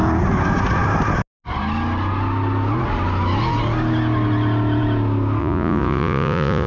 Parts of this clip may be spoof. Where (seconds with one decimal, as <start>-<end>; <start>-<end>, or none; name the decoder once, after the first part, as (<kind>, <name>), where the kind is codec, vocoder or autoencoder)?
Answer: 5.4-6.7 (vocoder, Vocos)